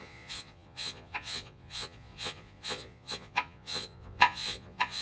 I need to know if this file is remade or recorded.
remade